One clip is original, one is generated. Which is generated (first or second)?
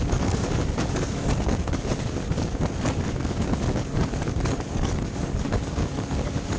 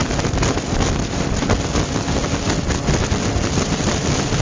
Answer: first